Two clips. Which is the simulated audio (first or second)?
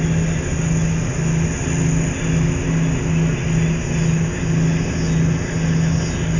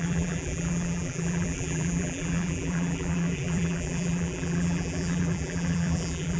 second